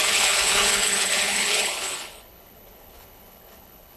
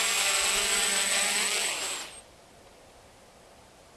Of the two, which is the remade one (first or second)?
first